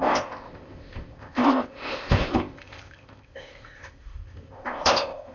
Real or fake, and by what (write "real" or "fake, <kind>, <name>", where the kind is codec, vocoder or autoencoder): fake, codec, ZipCodec